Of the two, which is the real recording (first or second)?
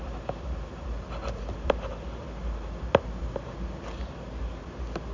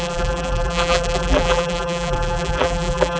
first